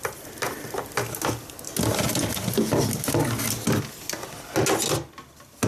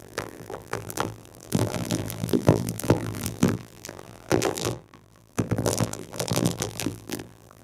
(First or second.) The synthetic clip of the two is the second